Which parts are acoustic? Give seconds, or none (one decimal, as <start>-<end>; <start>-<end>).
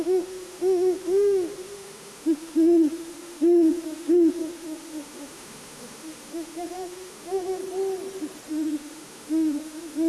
7.6-8.5